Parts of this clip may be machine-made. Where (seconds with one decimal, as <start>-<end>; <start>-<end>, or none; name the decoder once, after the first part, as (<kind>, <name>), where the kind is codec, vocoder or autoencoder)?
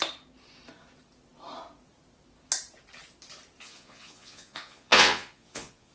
3.6-5.9 (vocoder, Vocos)